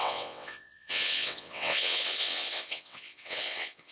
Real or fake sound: fake